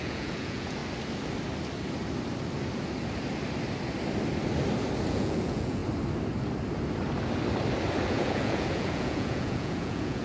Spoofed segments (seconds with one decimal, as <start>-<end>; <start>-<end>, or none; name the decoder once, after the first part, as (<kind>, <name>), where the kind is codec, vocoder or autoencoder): 0.0-0.8 (vocoder, Vocos); 5.1-5.8; 8.1-10.2